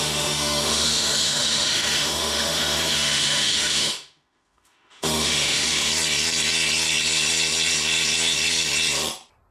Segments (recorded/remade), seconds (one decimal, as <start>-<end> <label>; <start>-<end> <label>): 0.0-5.9 remade; 5.9-9.5 recorded